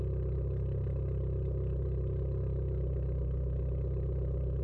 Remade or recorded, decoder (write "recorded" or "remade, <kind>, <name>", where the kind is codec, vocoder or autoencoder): recorded